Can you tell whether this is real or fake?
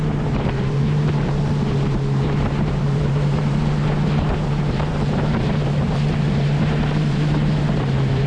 fake